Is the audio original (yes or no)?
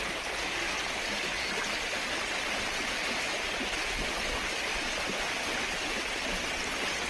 yes